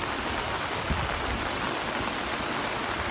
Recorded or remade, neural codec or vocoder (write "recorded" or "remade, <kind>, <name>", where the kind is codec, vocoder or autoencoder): recorded